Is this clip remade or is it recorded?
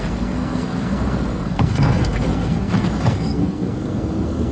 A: remade